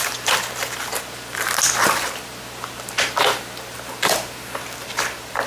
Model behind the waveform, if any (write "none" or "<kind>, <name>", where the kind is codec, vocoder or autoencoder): none